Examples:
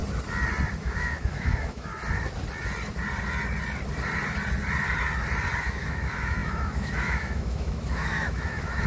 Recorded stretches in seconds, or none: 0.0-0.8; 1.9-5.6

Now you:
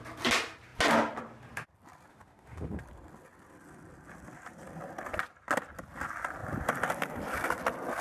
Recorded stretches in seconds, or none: 0.0-2.1; 2.8-8.0

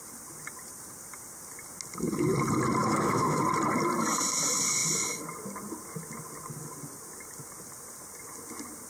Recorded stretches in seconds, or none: 0.0-2.8; 3.4-8.9